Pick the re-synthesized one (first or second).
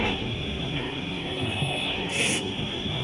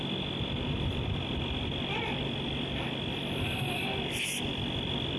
first